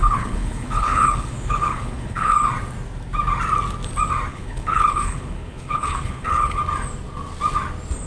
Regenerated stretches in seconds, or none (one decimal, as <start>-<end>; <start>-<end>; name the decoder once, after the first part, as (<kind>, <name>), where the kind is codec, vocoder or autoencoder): 0.0-2.5 (codec, HILCodec); 4.3-6.6